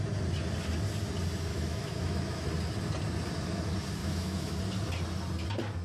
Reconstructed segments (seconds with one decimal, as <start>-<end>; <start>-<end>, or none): 1.5-2.5; 4.0-4.6